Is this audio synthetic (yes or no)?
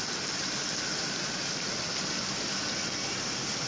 no